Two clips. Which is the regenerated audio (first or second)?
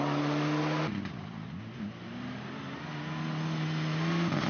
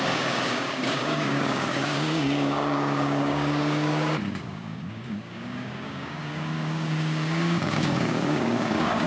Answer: second